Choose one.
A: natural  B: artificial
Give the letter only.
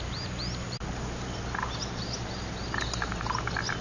A